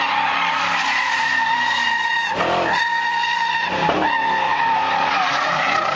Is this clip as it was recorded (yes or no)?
no